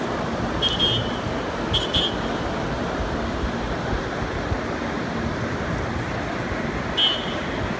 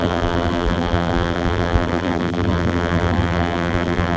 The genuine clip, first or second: first